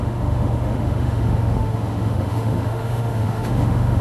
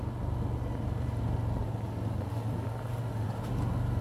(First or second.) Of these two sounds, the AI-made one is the first